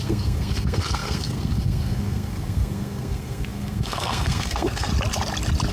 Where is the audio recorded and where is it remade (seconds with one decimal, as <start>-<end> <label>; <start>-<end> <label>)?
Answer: 0.0-4.9 remade; 4.9-5.7 recorded